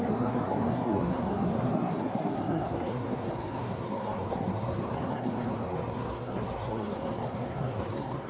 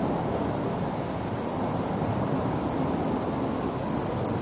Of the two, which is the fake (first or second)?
first